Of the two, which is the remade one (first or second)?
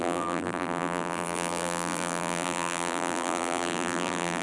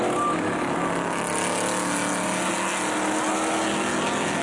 first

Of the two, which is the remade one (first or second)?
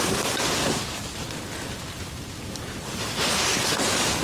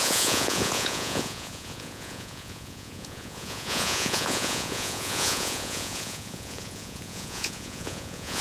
second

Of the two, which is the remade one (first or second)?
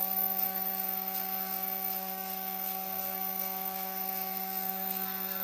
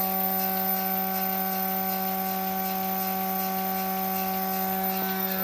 first